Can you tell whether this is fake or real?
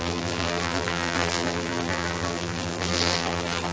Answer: fake